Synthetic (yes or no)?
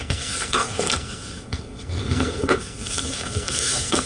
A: yes